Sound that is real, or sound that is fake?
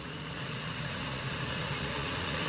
fake